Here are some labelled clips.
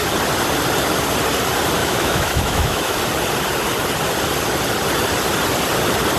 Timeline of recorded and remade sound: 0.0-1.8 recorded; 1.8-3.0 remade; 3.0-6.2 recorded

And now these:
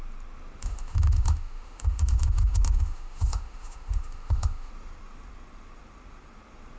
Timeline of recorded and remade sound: 0.0-0.6 recorded; 0.6-4.7 remade; 4.7-6.8 recorded

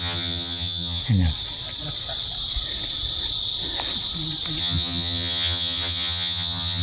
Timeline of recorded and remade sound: 0.0-1.0 remade; 1.0-4.6 recorded; 4.6-6.8 remade

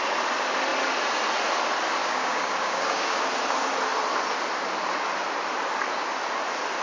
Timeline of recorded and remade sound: 0.0-2.0 recorded; 2.0-3.2 remade; 3.2-6.8 recorded

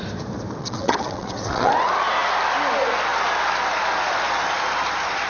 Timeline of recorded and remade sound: 0.0-0.6 recorded; 0.6-1.7 remade; 1.7-5.3 recorded

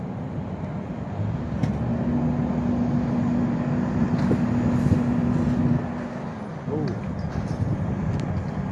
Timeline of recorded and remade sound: 0.0-8.7 recorded